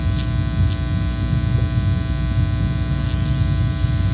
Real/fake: real